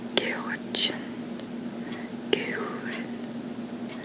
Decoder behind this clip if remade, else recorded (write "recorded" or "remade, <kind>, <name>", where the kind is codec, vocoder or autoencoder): recorded